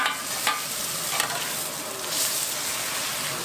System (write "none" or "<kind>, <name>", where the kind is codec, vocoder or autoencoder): none